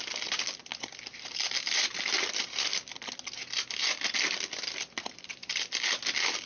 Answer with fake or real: real